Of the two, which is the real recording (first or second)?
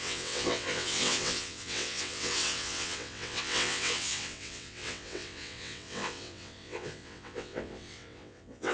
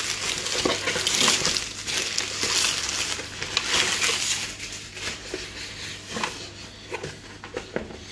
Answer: second